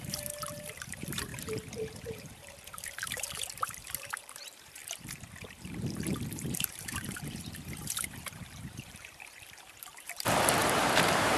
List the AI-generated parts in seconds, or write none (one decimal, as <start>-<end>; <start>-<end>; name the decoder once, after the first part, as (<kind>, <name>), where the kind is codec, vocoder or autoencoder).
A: 0.0-1.3 (vocoder, BigVGAN v2); 2.1-4.8; 5.4-11.4